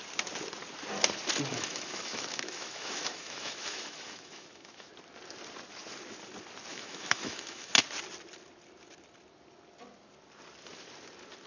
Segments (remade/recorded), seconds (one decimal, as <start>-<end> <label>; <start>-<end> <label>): 0.0-1.5 recorded; 1.5-4.9 remade; 4.9-6.7 recorded; 6.7-7.7 remade; 7.7-11.5 recorded